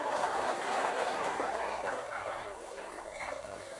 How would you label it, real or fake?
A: fake